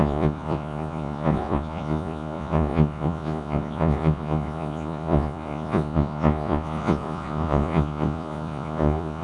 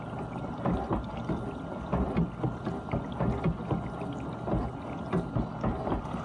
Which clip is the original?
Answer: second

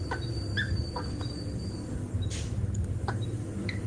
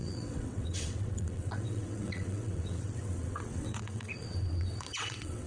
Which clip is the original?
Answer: first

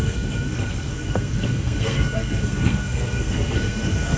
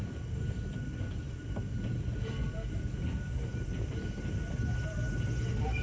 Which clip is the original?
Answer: second